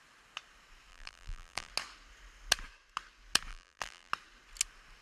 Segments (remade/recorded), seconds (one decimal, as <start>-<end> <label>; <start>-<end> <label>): 0.0-0.9 recorded; 0.9-1.7 remade; 1.7-3.5 recorded; 3.5-4.1 remade; 4.1-5.0 recorded